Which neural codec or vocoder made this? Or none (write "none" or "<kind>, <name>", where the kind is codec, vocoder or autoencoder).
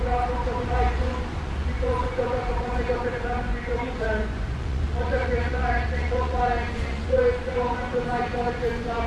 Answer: vocoder, Vocos